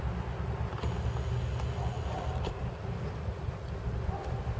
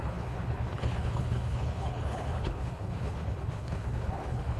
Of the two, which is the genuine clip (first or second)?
first